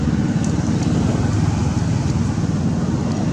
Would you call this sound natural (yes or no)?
yes